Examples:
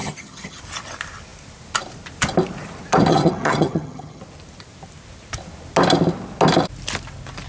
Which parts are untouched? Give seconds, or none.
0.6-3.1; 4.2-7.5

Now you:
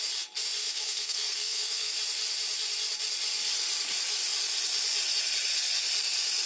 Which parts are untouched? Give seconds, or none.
0.0-0.6; 1.9-6.5